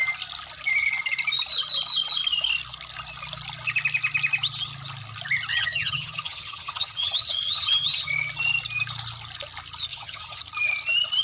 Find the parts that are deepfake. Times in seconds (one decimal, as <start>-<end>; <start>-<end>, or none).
5.5-8.1; 9.9-10.4